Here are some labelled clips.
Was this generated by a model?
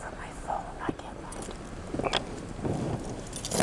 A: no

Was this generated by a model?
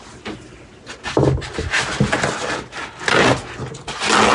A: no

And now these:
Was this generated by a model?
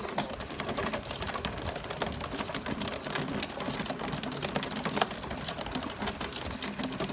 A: no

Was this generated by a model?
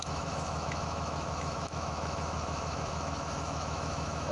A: yes